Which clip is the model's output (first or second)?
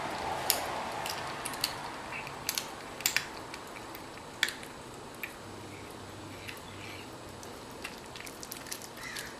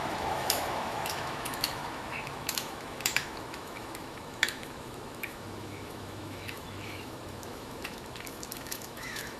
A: second